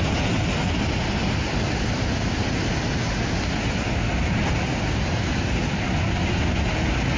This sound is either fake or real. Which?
real